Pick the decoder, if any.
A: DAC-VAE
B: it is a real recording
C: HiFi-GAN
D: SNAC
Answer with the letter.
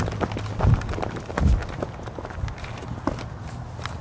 B